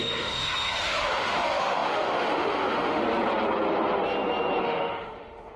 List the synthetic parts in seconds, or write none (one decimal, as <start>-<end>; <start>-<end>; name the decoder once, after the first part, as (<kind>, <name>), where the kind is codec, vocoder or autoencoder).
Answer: 0.0-3.0 (autoencoder, DAC-VAE); 4.6-5.6